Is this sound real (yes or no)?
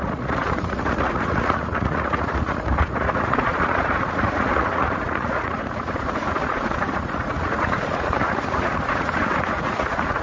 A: no